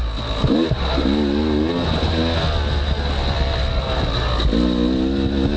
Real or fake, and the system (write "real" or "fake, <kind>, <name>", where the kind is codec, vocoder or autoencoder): real